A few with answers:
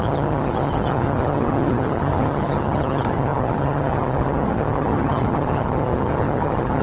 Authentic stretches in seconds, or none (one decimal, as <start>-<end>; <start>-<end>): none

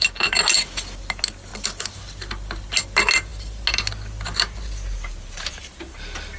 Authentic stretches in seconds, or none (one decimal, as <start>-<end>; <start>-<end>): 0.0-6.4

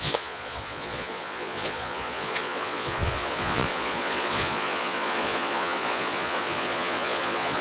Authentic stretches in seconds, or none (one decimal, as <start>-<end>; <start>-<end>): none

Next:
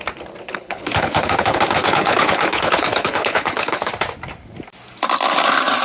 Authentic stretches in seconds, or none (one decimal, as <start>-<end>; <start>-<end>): 0.0-0.4; 3.9-5.8

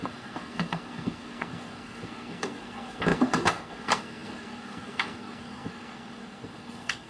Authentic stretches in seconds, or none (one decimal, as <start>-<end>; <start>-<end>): none

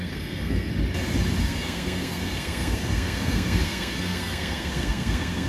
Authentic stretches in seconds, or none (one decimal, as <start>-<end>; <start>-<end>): 0.7-1.4